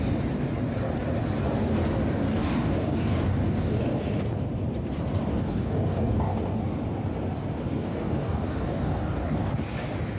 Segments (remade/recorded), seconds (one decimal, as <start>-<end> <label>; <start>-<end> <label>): 0.0-2.3 recorded; 2.3-4.0 remade; 4.0-5.3 recorded; 5.3-6.6 remade; 6.6-7.7 recorded; 7.7-9.5 remade; 9.5-10.2 recorded